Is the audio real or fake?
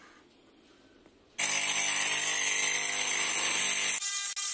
real